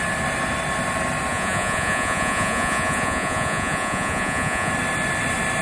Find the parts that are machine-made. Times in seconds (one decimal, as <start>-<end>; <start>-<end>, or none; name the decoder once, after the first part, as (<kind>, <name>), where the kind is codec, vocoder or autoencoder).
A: 1.3-4.7 (vocoder, Vocos)